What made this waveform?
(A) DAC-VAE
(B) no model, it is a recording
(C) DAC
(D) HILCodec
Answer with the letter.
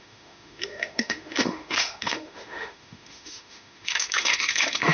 A